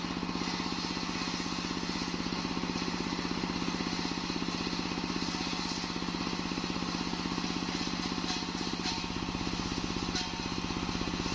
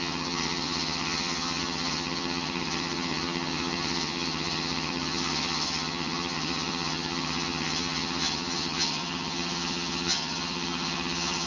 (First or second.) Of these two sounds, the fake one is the second